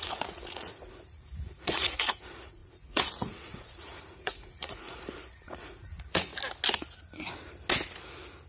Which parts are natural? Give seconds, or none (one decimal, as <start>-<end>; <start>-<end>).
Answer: 6.3-8.5